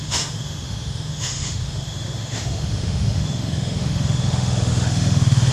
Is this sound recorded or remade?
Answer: remade